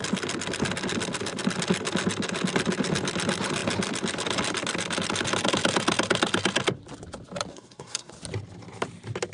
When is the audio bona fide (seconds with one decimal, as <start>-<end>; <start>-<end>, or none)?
0.0-7.5; 8.1-9.3